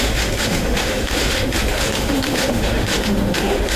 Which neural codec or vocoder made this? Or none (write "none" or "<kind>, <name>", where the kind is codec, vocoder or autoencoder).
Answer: autoencoder, DAC-VAE